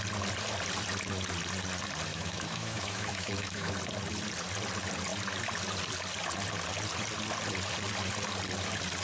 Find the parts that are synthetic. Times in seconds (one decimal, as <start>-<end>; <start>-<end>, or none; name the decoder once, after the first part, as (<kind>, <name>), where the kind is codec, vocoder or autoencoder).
2.1-3.7 (autoencoder, DAC-VAE)